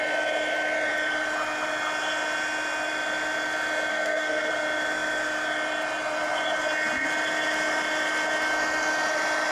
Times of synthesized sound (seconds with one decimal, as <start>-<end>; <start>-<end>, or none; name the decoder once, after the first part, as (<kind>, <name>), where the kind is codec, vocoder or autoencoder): 3.9-4.5 (codec, SNAC)